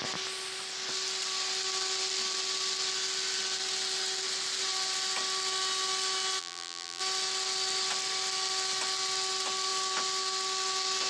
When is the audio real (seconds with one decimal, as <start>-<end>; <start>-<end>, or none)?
0.0-6.4; 7.0-11.1